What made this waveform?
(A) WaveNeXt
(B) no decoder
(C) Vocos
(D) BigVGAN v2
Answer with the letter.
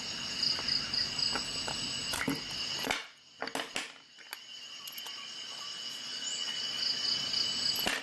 B